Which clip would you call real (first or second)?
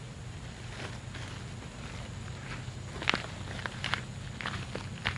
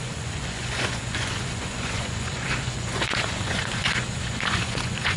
first